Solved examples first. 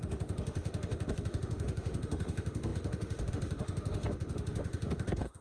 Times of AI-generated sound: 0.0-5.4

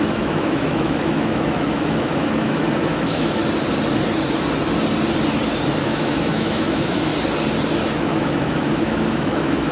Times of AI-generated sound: 0.0-3.4; 5.8-7.1; 8.0-9.7

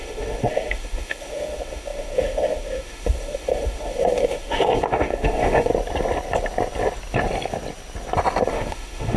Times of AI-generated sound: 0.0-5.7; 8.5-9.2

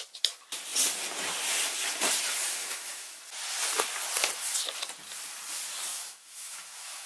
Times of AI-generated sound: 2.6-3.2; 5.9-7.1

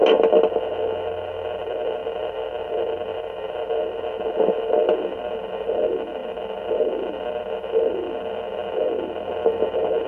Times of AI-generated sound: none

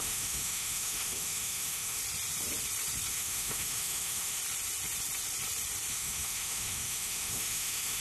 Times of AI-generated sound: 0.0-2.0; 3.1-4.4; 5.9-8.0

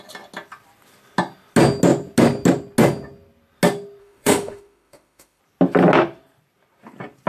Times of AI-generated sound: 4.0-5.4

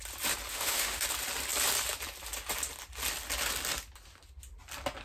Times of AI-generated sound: 0.5-1.0